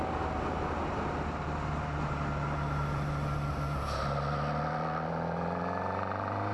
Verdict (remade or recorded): recorded